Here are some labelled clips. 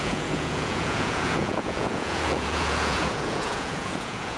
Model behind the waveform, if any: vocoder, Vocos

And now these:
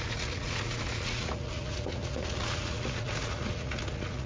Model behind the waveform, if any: vocoder, Vocos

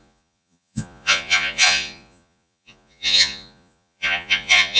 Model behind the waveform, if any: vocoder, Vocos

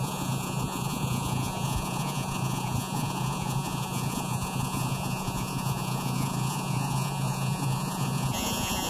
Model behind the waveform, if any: vocoder, Vocos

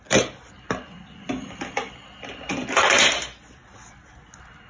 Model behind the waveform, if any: none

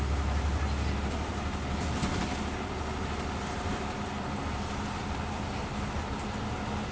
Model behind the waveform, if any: none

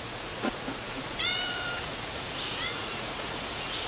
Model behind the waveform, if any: vocoder, Vocos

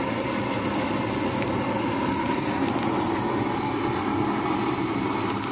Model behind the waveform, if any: none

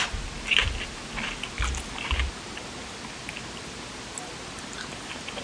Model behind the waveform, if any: none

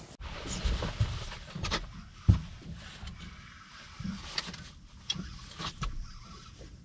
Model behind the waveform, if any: none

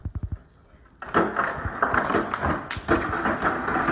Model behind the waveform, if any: none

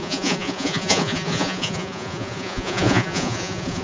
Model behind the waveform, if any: vocoder, Vocos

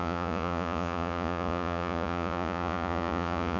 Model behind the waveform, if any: vocoder, Vocos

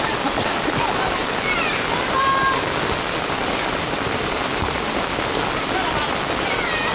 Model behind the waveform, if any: none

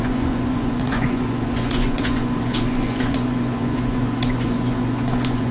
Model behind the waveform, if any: vocoder, Vocos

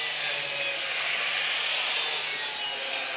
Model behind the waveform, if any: none